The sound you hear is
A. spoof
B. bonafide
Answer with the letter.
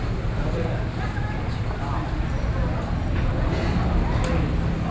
B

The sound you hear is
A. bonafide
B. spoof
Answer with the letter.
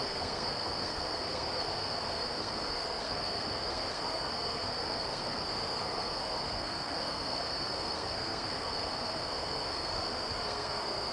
B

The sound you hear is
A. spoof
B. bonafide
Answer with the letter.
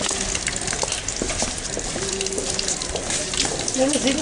B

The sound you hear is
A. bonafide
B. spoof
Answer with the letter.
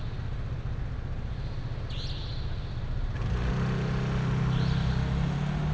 A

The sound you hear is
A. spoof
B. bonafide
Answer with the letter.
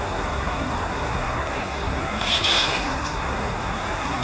A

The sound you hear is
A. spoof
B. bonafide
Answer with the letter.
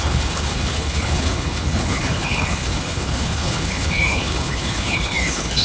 A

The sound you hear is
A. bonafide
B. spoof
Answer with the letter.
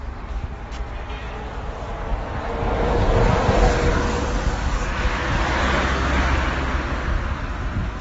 A